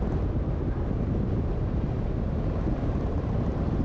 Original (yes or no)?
yes